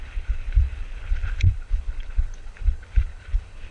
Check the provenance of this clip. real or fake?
fake